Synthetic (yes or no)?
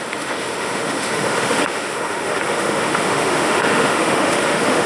yes